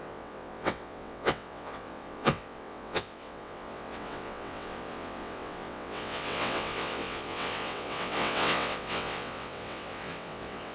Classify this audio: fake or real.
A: fake